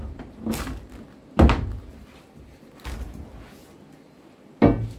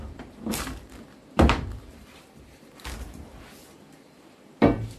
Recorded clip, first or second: first